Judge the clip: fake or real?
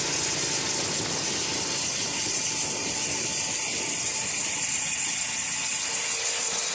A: real